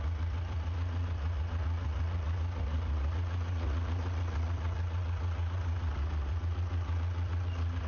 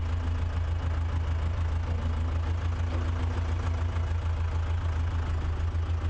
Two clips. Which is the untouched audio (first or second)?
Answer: second